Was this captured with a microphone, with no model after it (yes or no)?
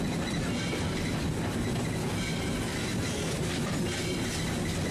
yes